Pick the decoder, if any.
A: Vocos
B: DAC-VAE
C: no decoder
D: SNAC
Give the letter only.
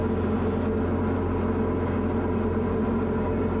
C